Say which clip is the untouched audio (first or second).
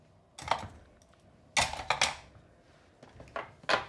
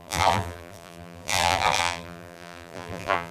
first